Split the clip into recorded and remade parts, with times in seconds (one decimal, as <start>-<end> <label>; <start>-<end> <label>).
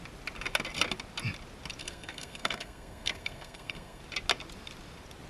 0.0-1.8 recorded; 1.8-4.0 remade; 4.0-5.3 recorded